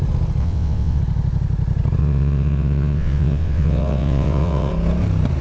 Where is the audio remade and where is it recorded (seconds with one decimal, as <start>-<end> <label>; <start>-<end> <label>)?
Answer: 0.0-0.4 recorded; 0.4-1.0 remade; 1.0-2.0 recorded; 2.0-4.7 remade; 4.7-5.4 recorded